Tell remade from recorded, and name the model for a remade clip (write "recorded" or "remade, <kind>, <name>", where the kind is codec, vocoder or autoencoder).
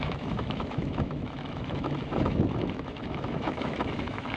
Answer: remade, autoencoder, DAC-VAE